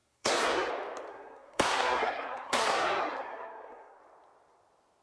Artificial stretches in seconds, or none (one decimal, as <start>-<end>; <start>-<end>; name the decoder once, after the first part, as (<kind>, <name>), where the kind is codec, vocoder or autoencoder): 0.0-0.7 (codec, SNAC); 1.1-4.0